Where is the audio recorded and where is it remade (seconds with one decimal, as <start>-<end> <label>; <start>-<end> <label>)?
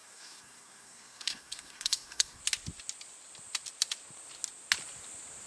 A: 0.0-2.4 remade; 2.4-5.5 recorded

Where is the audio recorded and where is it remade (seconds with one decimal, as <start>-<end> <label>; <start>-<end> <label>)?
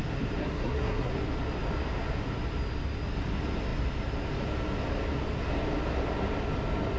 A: 0.0-0.4 recorded; 0.4-1.1 remade; 1.1-7.0 recorded